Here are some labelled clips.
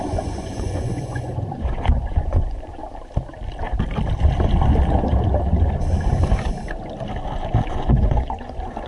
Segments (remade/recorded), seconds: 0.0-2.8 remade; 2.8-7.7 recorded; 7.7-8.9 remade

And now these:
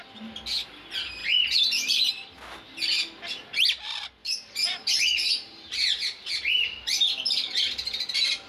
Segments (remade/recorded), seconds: 0.0-1.2 recorded; 1.2-2.1 remade; 2.1-4.2 recorded; 4.2-8.0 remade; 8.0-8.5 recorded

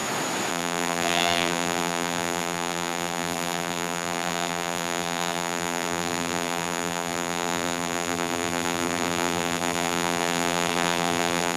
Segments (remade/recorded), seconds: 0.0-0.5 recorded; 0.5-11.6 remade

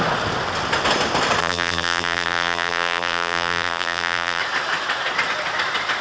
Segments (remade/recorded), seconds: 0.0-1.4 recorded; 1.4-4.4 remade; 4.4-6.0 recorded

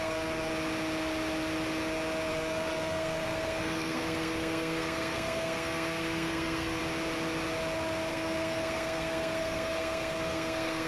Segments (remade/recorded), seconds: 0.0-0.5 remade; 0.5-2.3 recorded; 2.3-6.8 remade; 6.8-8.1 recorded; 8.1-10.9 remade

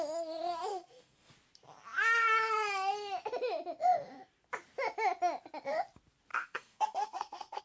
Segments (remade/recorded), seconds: 0.0-0.7 recorded; 0.7-1.3 remade; 1.3-6.3 recorded; 6.3-7.6 remade

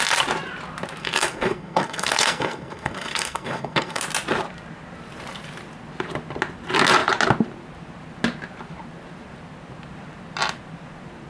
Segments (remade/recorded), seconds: 0.0-1.0 recorded; 1.0-4.0 remade; 4.0-11.3 recorded

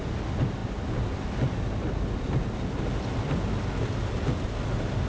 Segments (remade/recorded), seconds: 0.0-5.1 recorded